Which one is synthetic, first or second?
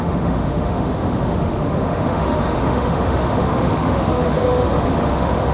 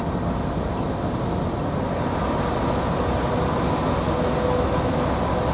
first